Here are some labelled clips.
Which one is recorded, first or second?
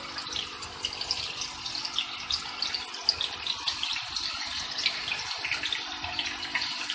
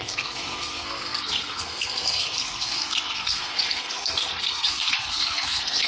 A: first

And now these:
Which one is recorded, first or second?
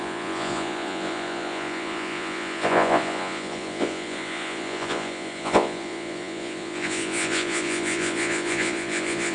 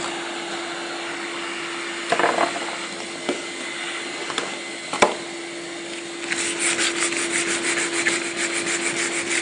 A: second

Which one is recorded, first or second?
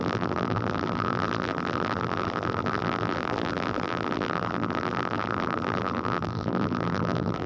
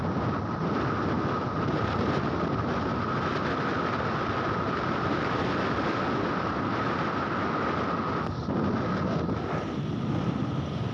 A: second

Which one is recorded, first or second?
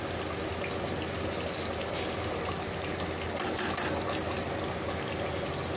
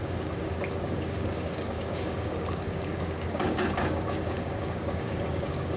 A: first